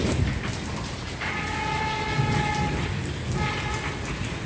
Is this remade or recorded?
recorded